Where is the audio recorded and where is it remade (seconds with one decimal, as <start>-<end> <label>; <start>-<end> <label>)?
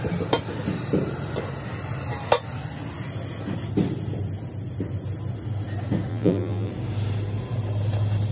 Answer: 0.0-6.1 recorded; 6.1-6.7 remade; 6.7-8.3 recorded